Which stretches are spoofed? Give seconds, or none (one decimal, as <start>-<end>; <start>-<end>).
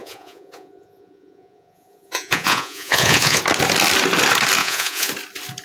0.0-3.4; 4.6-5.1